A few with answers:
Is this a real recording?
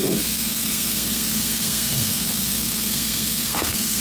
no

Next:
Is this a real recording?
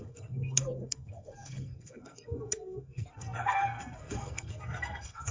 no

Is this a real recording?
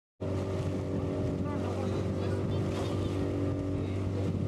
yes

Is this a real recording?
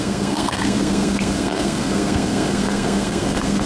no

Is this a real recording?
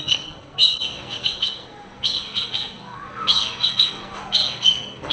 no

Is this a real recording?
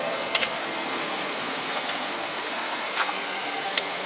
no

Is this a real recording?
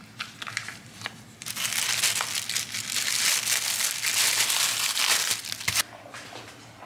yes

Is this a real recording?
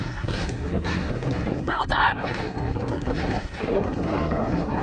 no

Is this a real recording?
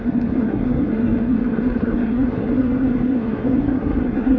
no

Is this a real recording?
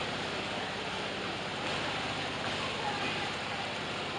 yes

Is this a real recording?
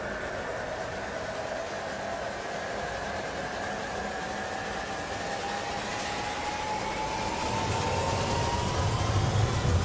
yes